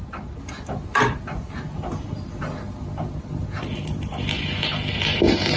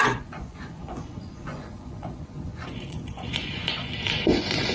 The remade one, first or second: second